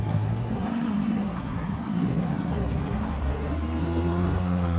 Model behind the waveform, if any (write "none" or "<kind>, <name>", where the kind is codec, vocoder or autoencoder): codec, SNAC